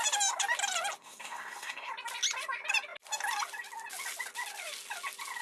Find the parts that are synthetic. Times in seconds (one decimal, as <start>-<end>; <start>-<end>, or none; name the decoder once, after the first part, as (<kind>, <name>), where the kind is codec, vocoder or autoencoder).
1.0-1.9 (codec, SNAC)

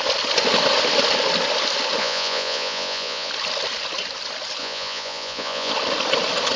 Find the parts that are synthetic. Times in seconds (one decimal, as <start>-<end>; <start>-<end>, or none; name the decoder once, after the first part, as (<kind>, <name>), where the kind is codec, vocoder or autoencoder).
2.0-3.3 (vocoder, Vocos); 4.6-5.7

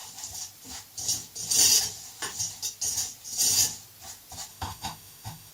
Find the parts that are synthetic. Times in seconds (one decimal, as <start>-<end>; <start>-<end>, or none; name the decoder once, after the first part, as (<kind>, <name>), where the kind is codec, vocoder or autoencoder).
4.5-5.5 (autoencoder, DAC-VAE)

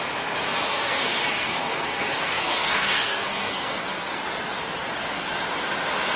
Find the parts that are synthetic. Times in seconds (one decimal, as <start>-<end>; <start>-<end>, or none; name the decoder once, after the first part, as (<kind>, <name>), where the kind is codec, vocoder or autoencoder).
0.7-4.2 (codec, SNAC)

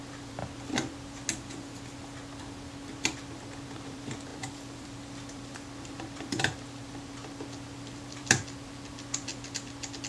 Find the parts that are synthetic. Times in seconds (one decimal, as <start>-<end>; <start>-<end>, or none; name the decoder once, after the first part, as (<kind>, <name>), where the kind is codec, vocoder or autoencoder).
0.0-0.4 (vocoder, BigVGAN v2); 3.7-9.3

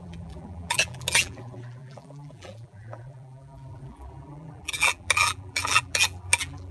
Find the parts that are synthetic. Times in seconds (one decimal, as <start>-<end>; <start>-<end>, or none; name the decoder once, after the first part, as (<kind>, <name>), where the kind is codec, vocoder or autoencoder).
0.0-6.7 (vocoder, BigVGAN v2)

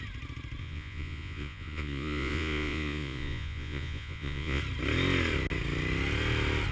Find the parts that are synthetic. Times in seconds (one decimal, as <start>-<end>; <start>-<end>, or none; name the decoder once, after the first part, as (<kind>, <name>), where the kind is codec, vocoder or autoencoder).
0.6-4.6 (vocoder, Vocos)

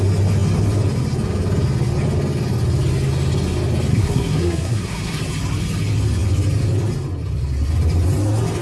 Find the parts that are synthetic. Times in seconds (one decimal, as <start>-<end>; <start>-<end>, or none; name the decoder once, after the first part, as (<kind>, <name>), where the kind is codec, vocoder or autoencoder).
3.9-5.2 (codec, SNAC)